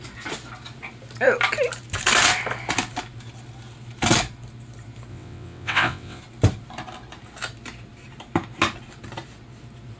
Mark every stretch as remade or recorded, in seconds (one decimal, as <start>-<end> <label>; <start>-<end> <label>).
0.0-5.1 recorded; 5.1-6.2 remade; 6.2-10.0 recorded